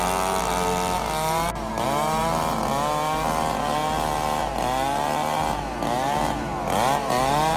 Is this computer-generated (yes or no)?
no